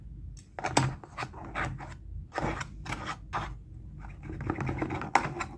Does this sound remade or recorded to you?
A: recorded